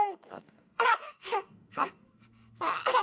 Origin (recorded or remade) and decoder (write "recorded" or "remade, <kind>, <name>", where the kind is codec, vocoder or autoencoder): remade, codec, SNAC